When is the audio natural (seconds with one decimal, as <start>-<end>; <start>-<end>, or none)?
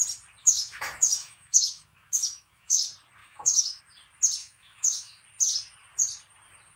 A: 0.0-0.4; 2.8-3.2; 3.8-4.4; 5.2-6.8